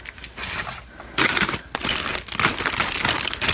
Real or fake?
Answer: real